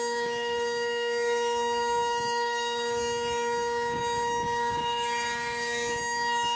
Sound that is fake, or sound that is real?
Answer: fake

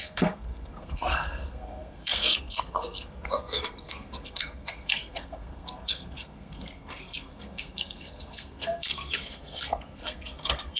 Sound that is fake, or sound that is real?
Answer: fake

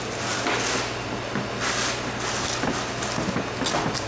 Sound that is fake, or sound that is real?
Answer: real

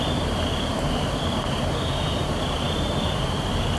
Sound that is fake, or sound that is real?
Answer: fake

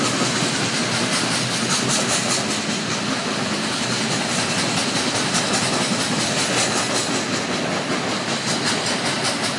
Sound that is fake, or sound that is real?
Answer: real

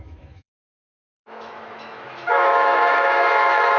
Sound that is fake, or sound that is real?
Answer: fake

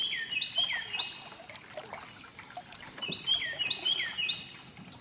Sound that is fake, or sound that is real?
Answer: real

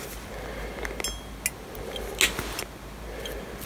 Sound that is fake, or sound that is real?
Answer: real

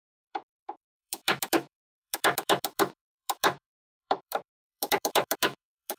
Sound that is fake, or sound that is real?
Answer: fake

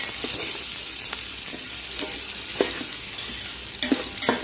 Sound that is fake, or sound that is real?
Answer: real